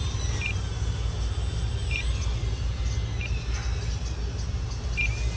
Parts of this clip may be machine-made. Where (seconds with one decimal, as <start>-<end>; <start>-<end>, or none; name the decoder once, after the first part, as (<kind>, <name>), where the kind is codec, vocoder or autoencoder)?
none